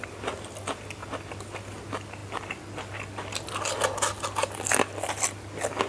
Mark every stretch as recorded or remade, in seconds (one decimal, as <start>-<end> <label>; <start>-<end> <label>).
0.0-5.9 recorded